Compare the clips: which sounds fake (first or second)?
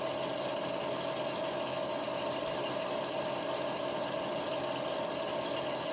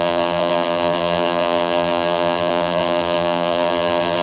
second